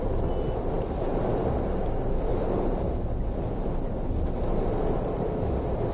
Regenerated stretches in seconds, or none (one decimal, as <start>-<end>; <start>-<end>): 2.3-2.9